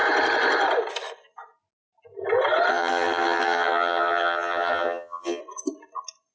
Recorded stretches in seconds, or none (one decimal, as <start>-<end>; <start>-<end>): 0.0-2.7; 5.4-6.3